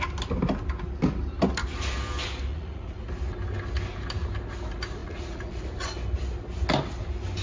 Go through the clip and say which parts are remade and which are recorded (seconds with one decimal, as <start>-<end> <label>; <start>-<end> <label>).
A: 0.0-2.5 recorded; 2.5-3.0 remade; 3.0-5.0 recorded; 5.0-5.9 remade; 5.9-7.4 recorded